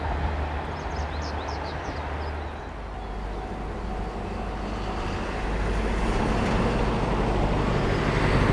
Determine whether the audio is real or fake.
real